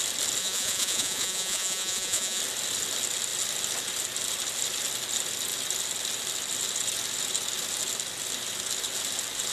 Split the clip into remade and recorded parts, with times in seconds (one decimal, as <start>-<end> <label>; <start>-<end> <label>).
0.0-0.4 recorded; 0.4-2.4 remade; 2.4-9.5 recorded